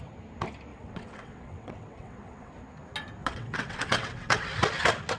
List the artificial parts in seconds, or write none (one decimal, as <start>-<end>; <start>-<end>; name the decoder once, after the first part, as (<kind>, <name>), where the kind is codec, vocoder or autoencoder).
0.7-2.5 (vocoder, WaveNeXt); 3.2-4.4